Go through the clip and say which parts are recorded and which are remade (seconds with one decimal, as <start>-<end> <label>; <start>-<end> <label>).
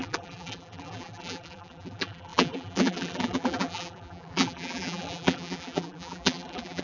0.0-6.8 remade